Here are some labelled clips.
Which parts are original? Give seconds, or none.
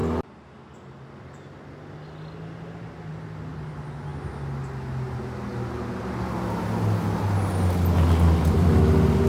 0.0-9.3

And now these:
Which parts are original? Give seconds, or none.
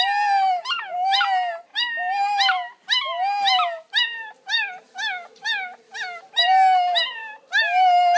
0.0-8.2